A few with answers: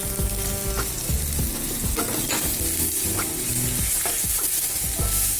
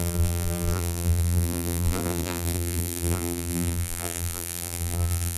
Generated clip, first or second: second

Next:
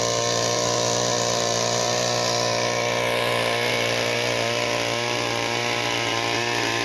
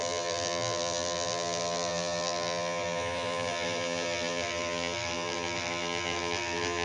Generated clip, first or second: second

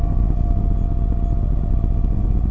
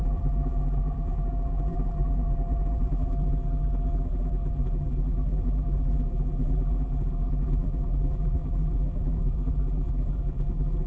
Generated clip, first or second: second